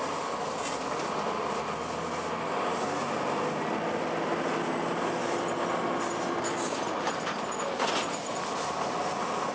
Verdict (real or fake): real